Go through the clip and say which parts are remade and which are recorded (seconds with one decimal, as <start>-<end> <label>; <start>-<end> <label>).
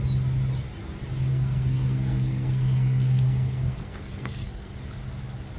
0.0-1.3 recorded; 1.3-4.7 remade; 4.7-5.6 recorded